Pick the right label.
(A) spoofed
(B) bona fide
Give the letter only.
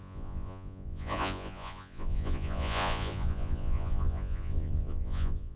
A